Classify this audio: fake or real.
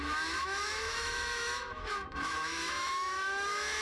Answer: fake